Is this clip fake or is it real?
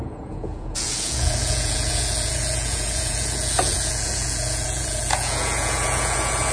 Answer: fake